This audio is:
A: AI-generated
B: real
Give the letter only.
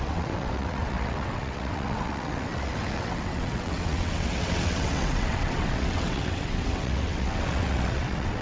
A